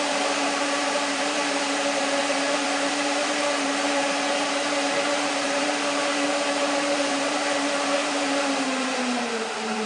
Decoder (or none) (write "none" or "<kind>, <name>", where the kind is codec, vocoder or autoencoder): vocoder, BigVGAN v2